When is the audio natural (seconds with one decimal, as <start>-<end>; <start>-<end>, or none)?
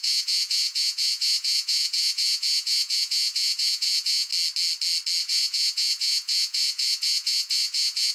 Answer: 4.3-5.2